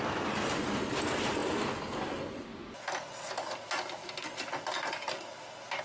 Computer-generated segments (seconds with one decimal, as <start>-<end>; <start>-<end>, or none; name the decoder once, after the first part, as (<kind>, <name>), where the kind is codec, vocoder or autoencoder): none